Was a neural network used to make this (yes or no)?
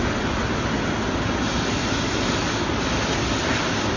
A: no